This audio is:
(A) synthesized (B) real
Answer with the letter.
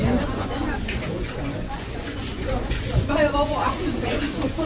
A